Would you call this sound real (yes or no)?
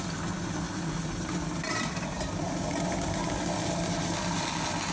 yes